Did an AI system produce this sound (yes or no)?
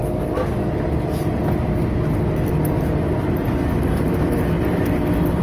no